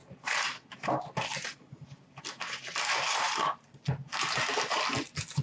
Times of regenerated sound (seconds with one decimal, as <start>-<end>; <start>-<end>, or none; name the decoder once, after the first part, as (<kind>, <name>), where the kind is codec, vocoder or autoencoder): none